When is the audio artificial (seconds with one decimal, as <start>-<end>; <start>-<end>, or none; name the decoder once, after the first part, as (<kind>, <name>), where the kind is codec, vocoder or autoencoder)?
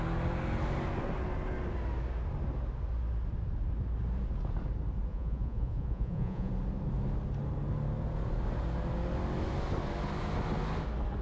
5.1-6.5 (vocoder, Vocos)